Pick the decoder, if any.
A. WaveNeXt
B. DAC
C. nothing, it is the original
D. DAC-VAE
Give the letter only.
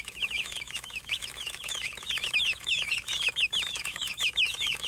D